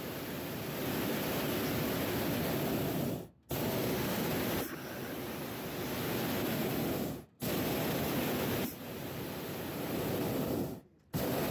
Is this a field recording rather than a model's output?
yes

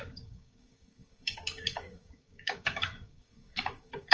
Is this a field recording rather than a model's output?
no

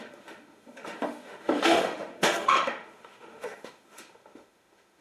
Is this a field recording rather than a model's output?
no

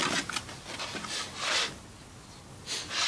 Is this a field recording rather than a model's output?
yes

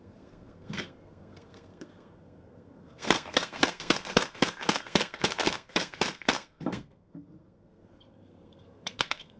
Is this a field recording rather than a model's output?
no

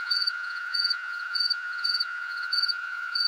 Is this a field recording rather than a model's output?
no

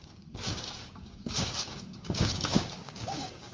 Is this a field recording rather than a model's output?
no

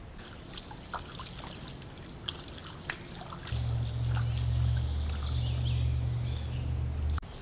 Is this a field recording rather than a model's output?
yes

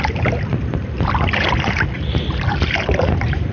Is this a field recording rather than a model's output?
yes